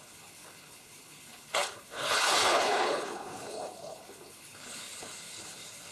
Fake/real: fake